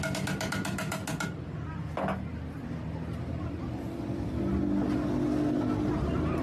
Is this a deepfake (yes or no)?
no